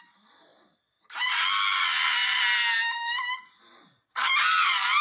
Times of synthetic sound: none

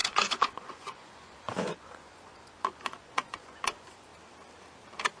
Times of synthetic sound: 0.0-4.1 (vocoder, Vocos)

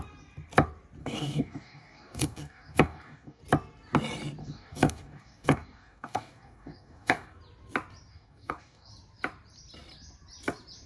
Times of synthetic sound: 1.0-3.4 (codec, DAC); 4.4-7.4; 8.1-8.9

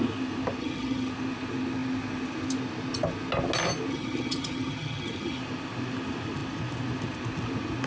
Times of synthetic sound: 0.6-1.1 (vocoder, HiFi-GAN); 3.9-5.4

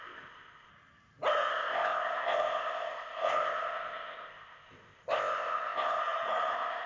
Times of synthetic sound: 0.0-0.7 (codec, ZipCodec); 1.5-6.0; 6.5-6.9